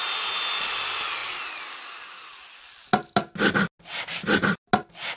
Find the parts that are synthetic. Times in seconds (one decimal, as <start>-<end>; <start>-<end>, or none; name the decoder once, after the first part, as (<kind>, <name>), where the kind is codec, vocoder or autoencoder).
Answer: none